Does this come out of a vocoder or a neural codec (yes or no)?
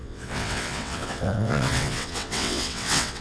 yes